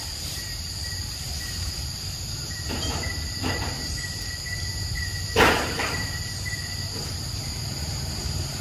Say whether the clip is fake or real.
fake